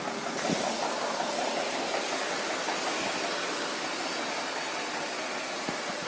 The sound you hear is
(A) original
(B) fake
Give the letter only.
A